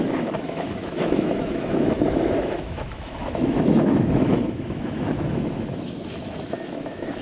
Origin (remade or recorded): remade